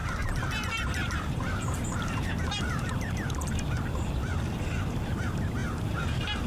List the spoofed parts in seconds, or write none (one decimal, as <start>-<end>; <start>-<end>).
0.0-3.5; 5.6-6.5